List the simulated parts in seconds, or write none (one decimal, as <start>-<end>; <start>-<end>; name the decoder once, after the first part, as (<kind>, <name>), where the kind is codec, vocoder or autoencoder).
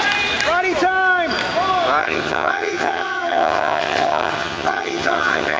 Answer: 2.0-5.6 (vocoder, HiFi-GAN)